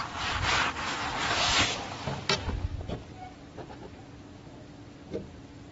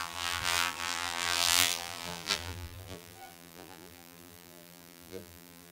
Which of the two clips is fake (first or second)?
second